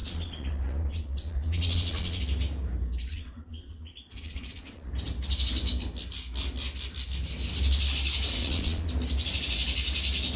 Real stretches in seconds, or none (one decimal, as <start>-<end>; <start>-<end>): 2.2-3.1; 4.9-8.4; 8.9-10.4